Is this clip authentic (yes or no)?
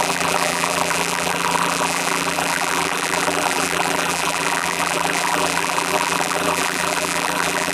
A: no